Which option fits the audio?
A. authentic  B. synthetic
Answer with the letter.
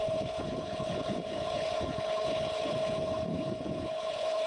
B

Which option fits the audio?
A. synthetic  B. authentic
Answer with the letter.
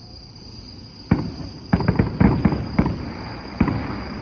B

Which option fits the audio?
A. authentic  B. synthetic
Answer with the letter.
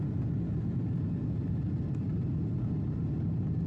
A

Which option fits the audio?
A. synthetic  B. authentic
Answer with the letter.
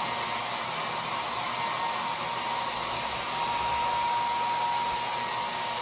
B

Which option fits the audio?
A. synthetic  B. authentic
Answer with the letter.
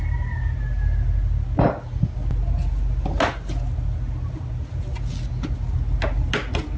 B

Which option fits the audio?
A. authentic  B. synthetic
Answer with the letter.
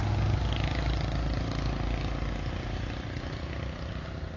A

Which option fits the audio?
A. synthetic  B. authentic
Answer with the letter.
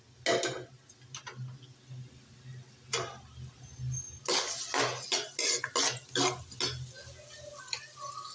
B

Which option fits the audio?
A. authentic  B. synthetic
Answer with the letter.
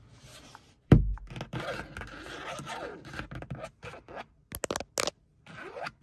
A